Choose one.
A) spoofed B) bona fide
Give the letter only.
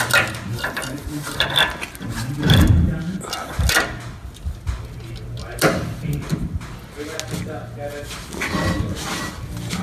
B